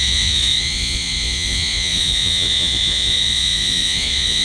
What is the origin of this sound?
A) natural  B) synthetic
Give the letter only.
B